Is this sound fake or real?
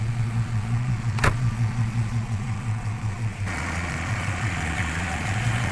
fake